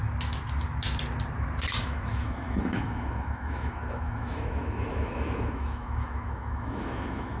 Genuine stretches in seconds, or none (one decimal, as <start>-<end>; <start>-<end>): 0.0-1.8